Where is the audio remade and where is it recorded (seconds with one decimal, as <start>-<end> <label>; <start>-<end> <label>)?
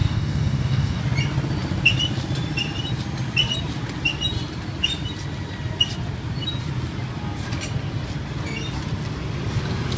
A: 0.0-1.0 remade; 1.0-10.0 recorded